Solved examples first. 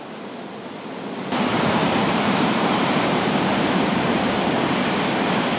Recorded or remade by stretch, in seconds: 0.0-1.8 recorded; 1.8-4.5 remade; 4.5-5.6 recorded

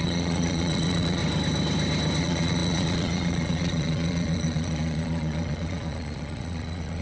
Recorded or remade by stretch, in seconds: 0.0-1.2 remade; 1.2-2.2 recorded; 2.2-7.0 remade

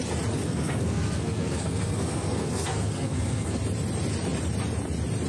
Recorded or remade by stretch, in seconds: 0.0-0.4 recorded; 0.4-3.6 remade; 3.6-5.3 recorded

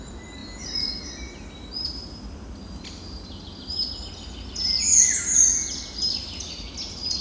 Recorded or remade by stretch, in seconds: 0.0-7.2 recorded

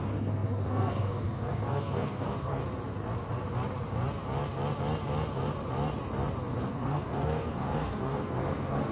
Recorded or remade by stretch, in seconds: 0.0-2.6 remade; 2.6-6.6 recorded; 6.6-8.9 remade

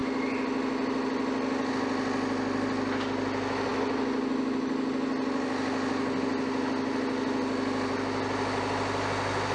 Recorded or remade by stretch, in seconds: 0.0-9.5 recorded

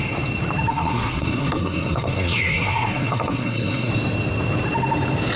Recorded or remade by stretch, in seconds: 0.0-0.7 recorded; 0.7-3.9 remade; 3.9-5.4 recorded